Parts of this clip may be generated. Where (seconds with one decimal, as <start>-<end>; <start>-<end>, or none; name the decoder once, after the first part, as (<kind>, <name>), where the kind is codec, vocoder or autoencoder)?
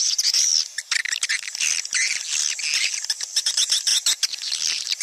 0.0-0.5 (vocoder, BigVGAN v2); 3.5-5.0